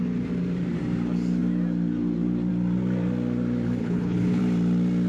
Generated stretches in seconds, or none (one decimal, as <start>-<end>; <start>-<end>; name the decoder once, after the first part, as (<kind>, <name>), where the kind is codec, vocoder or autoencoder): 3.8-4.4 (codec, HILCodec)